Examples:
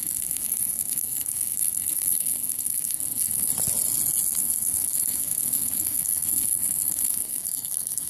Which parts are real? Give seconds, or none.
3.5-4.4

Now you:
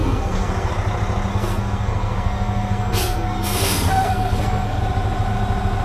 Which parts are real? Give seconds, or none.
0.7-1.3; 4.8-5.8

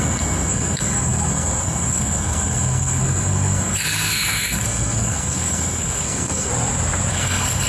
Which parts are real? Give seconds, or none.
6.5-7.1

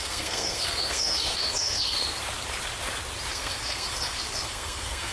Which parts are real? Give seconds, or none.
2.0-3.3

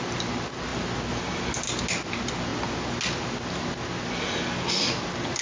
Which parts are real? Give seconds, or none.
0.0-5.4